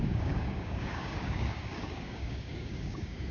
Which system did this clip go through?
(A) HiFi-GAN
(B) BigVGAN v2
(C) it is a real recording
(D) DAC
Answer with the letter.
D